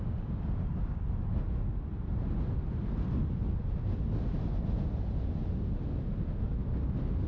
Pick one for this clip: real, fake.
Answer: real